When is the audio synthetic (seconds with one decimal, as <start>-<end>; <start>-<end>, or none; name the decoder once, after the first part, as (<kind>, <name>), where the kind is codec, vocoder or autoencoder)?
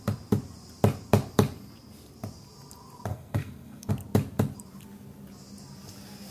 3.1-3.9 (codec, SNAC)